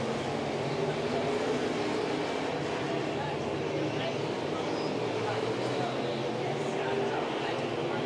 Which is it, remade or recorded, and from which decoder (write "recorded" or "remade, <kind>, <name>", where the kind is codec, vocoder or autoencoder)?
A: recorded